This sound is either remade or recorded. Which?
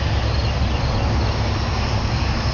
recorded